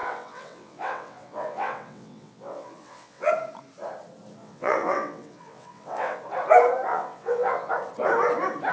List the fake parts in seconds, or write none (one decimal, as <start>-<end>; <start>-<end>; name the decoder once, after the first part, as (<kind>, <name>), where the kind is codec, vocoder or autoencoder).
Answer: 0.0-3.3 (vocoder, WaveNeXt); 4.4-6.2; 6.9-7.7